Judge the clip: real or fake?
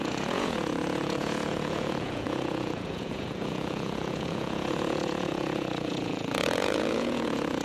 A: fake